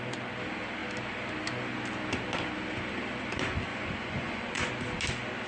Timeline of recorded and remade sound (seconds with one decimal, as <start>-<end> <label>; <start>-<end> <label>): 0.0-3.7 recorded; 3.7-4.7 remade; 4.7-5.5 recorded